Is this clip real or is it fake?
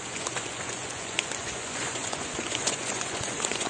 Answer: fake